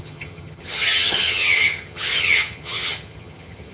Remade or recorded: remade